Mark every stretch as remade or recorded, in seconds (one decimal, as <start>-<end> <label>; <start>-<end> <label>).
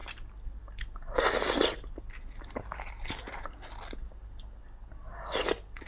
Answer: 0.0-5.9 recorded